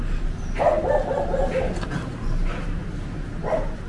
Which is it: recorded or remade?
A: recorded